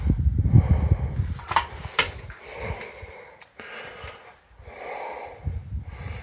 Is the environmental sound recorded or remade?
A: recorded